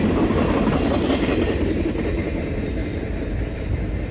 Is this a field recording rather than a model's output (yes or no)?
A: no